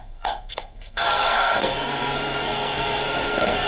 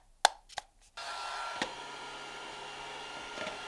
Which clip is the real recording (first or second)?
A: second